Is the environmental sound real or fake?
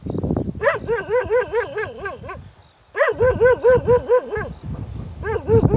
fake